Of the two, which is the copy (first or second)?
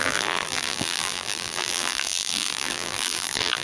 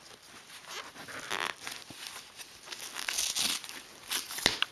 first